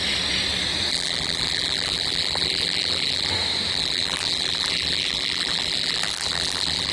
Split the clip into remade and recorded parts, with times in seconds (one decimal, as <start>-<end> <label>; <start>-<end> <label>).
0.0-0.9 recorded; 0.9-3.3 remade; 3.3-3.7 recorded; 3.7-6.9 remade